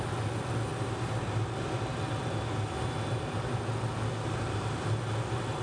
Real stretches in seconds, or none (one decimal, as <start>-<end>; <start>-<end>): 0.0-5.6